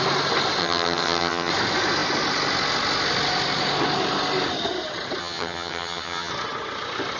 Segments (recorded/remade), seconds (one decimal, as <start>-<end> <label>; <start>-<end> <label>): 0.0-0.6 recorded; 0.6-1.5 remade; 1.5-5.2 recorded; 5.2-6.3 remade; 6.3-7.2 recorded